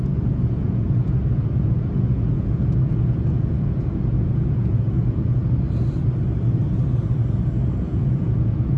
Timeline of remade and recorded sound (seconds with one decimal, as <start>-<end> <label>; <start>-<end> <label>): 0.0-5.4 remade; 5.4-7.8 recorded; 7.8-8.8 remade

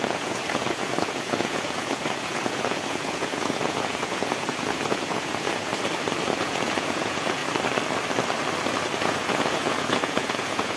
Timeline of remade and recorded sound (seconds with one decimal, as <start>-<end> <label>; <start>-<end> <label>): 0.0-5.7 remade; 5.7-6.4 recorded; 6.4-7.4 remade; 7.4-9.0 recorded; 9.0-10.8 remade

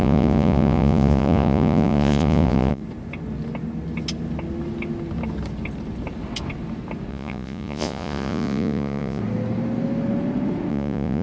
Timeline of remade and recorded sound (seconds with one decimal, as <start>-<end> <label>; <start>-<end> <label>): 0.0-2.8 remade; 2.8-7.1 recorded; 7.1-9.2 remade; 9.2-10.7 recorded; 10.7-11.2 remade

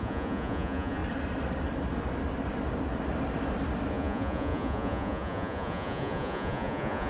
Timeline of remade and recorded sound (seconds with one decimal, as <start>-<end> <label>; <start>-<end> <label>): 0.0-1.0 remade; 1.0-3.9 recorded; 3.9-7.1 remade